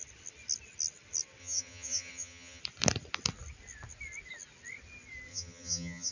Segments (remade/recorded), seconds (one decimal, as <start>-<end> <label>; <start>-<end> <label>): 0.0-1.4 recorded; 1.4-2.6 remade; 2.6-5.3 recorded; 5.3-6.1 remade